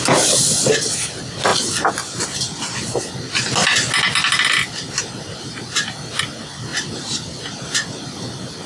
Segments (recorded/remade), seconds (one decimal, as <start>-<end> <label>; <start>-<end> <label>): 0.0-8.7 recorded